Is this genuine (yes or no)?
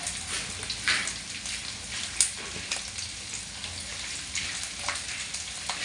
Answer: yes